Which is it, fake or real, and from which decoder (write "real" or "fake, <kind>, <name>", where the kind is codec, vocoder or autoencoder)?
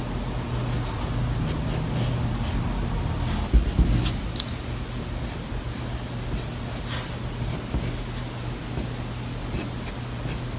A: real